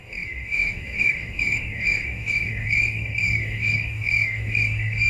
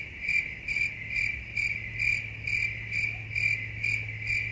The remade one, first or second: first